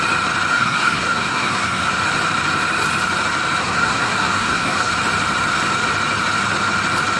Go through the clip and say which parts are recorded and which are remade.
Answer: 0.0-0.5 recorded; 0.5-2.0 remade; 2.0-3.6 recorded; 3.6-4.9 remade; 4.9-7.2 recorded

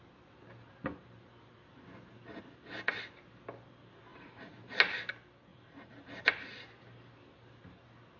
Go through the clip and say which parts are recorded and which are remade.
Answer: 0.0-4.1 recorded; 4.1-4.6 remade; 4.6-5.5 recorded; 5.5-6.1 remade; 6.1-8.2 recorded

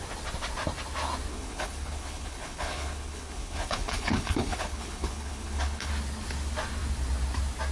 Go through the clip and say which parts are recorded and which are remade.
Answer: 0.0-1.3 recorded; 1.3-5.9 remade; 5.9-7.7 recorded

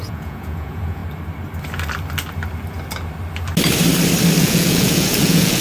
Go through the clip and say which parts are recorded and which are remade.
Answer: 0.0-1.0 remade; 1.0-4.4 recorded; 4.4-5.6 remade

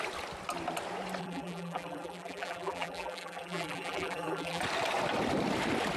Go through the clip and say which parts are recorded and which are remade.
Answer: 0.0-1.2 recorded; 1.2-4.6 remade; 4.6-6.0 recorded

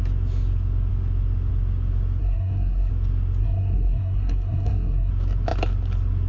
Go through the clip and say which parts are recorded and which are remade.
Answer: 0.0-2.2 recorded; 2.2-2.9 remade; 2.9-3.4 recorded; 3.4-5.1 remade; 5.1-6.3 recorded

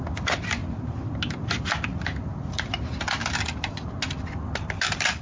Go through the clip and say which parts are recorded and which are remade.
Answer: 0.0-5.2 recorded